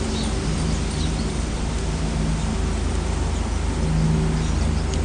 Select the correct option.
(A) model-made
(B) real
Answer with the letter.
B